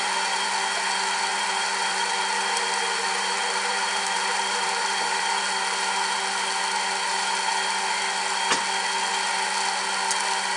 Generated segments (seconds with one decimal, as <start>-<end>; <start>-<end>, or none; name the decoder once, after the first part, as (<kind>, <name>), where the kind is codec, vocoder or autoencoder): 1.3-5.4 (vocoder, BigVGAN v2)